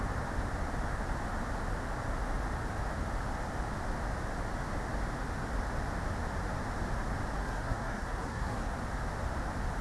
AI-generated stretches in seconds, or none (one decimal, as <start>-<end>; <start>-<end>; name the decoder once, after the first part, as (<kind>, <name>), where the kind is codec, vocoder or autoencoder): 7.4-8.7 (codec, SNAC)